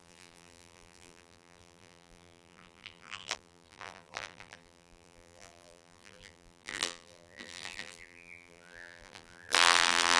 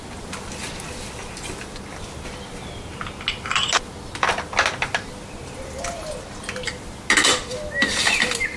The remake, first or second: first